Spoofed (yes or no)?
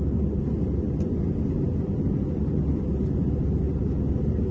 no